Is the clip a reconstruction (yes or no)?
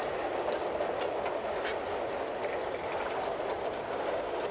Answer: no